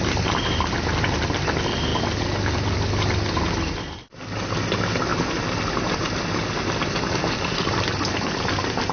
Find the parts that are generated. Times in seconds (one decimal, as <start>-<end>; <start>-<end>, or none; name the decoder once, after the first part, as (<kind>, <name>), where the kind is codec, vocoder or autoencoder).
none